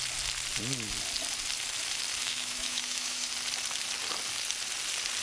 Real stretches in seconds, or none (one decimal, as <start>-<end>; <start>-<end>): 0.0-2.2; 3.3-5.2